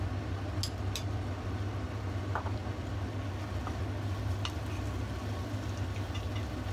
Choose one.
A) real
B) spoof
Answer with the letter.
A